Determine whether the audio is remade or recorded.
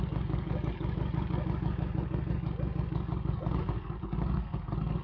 remade